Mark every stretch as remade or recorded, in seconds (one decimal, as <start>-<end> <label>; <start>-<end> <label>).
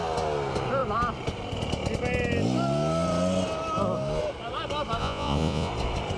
0.0-5.0 recorded; 5.0-5.7 remade; 5.7-6.2 recorded